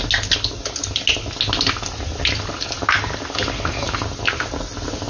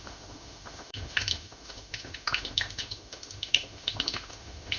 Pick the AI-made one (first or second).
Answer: second